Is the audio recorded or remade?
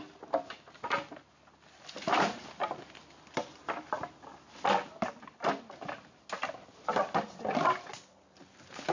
recorded